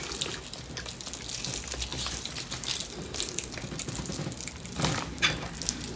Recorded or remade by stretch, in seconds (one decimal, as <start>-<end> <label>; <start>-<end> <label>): 0.0-1.9 recorded; 1.9-5.5 remade; 5.5-6.0 recorded